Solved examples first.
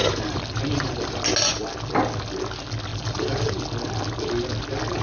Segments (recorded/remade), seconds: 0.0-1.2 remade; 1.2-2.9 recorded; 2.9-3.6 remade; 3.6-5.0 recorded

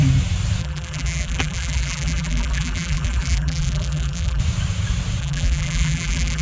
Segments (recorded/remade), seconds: 0.0-0.6 recorded; 0.6-4.4 remade; 4.4-5.2 recorded; 5.2-6.4 remade

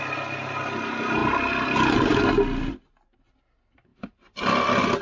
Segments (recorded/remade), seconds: 0.0-5.0 recorded

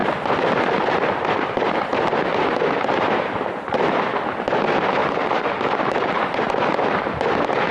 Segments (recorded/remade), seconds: 0.0-5.0 recorded; 5.0-6.4 remade; 6.4-7.7 recorded

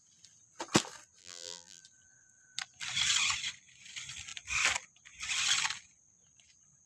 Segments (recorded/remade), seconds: 0.0-1.2 recorded; 1.2-1.8 remade; 1.8-6.9 recorded

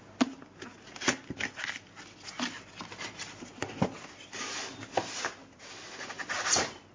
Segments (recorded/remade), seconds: 0.0-6.9 recorded

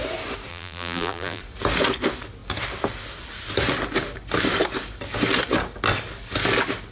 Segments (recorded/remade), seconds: 0.0-0.5 recorded; 0.5-1.4 remade; 1.4-6.9 recorded